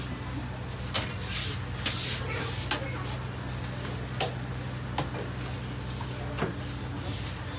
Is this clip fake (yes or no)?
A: no